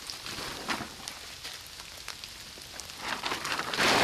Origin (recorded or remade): recorded